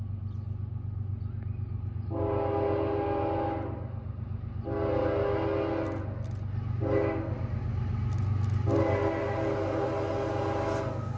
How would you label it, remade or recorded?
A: recorded